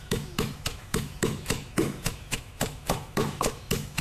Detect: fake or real fake